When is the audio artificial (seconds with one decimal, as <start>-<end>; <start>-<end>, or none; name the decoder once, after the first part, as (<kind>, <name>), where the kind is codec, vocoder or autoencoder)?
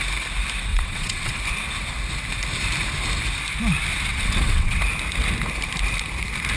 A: 0.7-1.4 (vocoder, WaveNeXt); 4.1-4.8